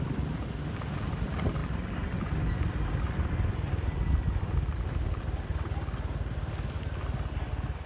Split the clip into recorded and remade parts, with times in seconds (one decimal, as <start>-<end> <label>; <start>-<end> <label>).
0.0-7.9 recorded